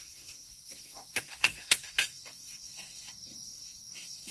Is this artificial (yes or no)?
yes